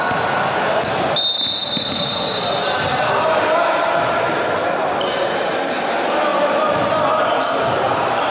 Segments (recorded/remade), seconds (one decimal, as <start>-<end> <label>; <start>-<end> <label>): 0.0-8.3 recorded